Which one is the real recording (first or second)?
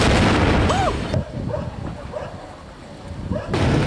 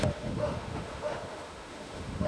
first